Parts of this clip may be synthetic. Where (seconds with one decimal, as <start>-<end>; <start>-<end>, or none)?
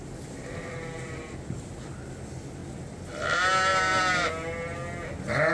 none